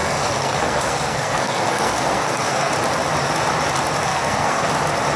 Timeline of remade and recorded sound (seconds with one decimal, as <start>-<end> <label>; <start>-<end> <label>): 0.0-2.7 remade; 2.7-4.1 recorded; 4.1-4.7 remade; 4.7-5.2 recorded